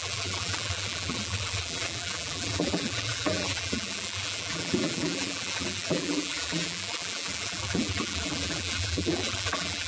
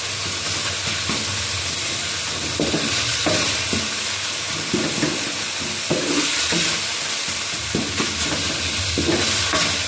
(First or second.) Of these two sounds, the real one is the second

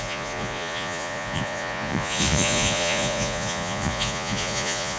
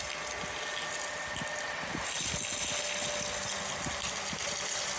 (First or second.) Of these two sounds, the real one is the second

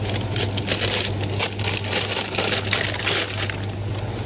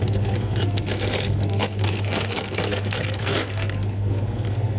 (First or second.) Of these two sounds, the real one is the first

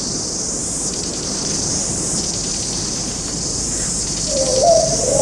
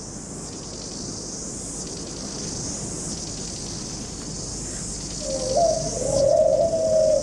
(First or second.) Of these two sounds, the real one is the second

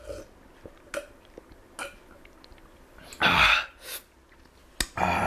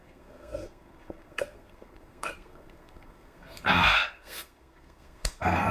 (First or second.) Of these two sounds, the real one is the first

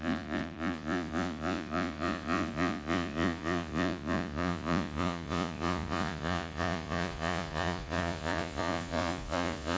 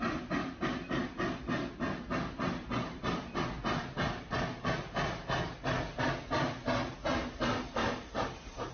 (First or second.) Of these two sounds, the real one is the second